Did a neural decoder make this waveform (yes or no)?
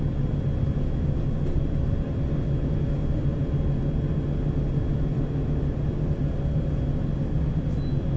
no